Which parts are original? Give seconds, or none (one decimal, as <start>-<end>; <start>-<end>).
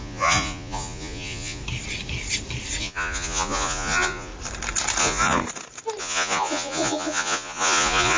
1.6-2.8; 4.3-5.0; 5.4-6.0